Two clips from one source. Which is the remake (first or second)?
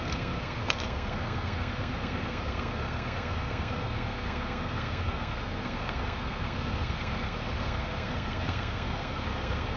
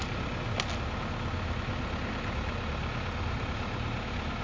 first